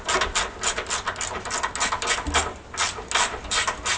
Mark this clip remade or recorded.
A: recorded